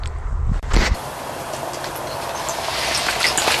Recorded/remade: recorded